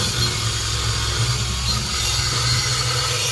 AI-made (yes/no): no